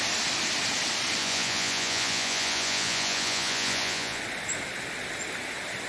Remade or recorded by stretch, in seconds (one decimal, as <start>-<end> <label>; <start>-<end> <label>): 0.0-1.2 recorded; 1.2-4.2 remade; 4.2-5.9 recorded